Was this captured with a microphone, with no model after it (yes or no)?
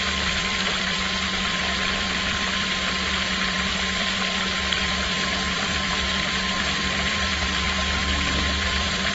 no